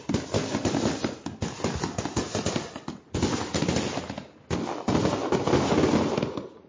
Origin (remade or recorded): recorded